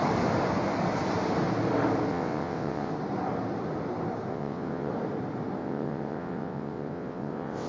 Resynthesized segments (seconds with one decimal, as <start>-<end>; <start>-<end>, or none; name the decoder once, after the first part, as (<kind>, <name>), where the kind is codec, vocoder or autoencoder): 2.1-2.9 (vocoder, WaveNeXt); 4.3-4.9; 5.6-7.7